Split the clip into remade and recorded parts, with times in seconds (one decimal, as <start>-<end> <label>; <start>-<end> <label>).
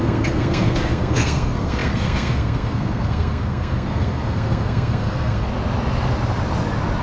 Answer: 0.0-5.5 remade; 5.5-7.0 recorded